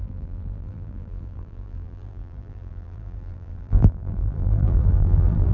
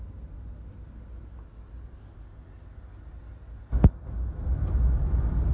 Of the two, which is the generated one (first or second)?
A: first